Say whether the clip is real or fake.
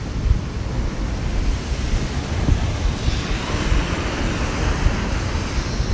real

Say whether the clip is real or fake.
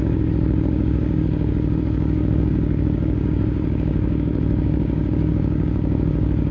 fake